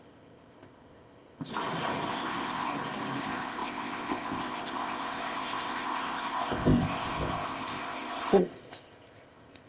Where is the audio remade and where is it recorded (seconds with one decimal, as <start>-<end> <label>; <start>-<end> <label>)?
0.0-1.5 remade; 1.5-2.1 recorded; 2.1-2.7 remade; 2.7-3.2 recorded; 3.2-9.7 remade